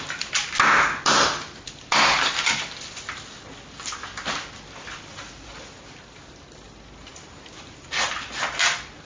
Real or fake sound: real